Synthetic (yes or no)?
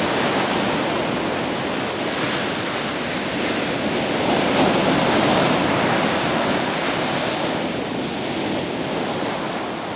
no